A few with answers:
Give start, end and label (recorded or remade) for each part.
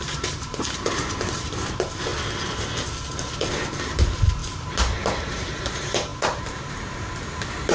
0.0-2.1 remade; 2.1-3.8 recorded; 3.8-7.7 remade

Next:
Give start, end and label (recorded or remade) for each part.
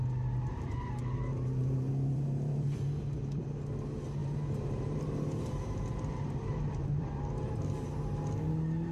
0.0-1.3 recorded; 1.3-2.8 remade; 2.8-4.2 recorded; 4.2-7.1 remade; 7.1-8.9 recorded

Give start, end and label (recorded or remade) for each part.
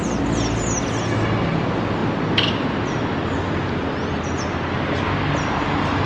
0.0-6.1 recorded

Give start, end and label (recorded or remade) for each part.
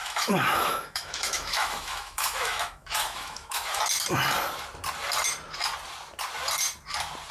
0.0-3.8 remade; 3.8-7.3 recorded